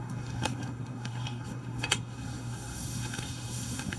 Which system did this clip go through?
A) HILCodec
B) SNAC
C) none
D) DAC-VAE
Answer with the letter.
B